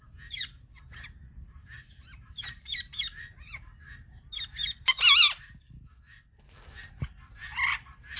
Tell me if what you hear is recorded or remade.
recorded